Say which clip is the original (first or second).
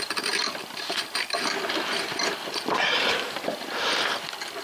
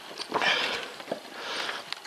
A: second